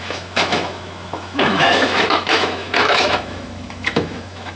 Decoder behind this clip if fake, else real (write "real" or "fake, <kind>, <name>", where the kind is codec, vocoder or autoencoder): fake, autoencoder, DAC-VAE